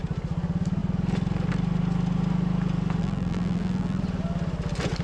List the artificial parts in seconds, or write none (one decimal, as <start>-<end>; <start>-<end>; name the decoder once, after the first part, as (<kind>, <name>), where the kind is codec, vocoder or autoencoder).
3.0-4.0 (vocoder, BigVGAN v2)